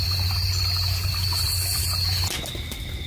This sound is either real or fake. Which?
real